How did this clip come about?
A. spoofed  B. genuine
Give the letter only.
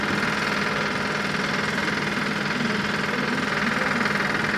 B